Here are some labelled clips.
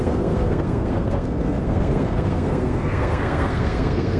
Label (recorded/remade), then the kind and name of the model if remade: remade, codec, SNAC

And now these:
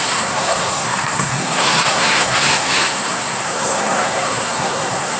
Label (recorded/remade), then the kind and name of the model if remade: remade, codec, SNAC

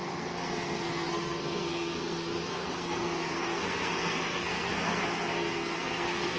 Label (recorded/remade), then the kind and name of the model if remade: remade, codec, SNAC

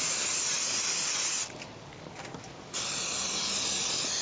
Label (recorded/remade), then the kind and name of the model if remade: recorded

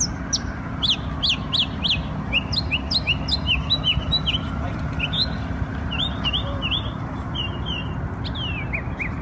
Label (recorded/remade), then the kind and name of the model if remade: recorded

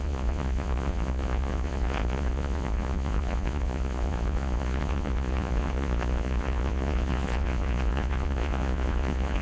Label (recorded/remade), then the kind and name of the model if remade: remade, vocoder, Vocos